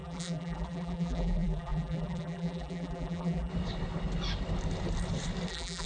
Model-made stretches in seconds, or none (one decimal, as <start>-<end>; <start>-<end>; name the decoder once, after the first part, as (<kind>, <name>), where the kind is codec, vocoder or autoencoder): 0.0-3.5 (vocoder, BigVGAN v2); 5.5-5.9